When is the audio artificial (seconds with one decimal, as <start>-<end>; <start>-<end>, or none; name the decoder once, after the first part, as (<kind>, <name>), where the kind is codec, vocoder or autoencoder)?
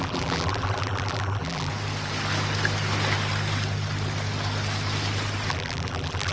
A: 0.0-1.7 (vocoder, BigVGAN v2); 5.5-6.3